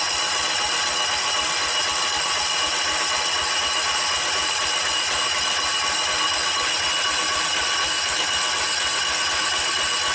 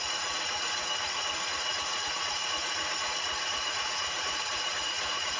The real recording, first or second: first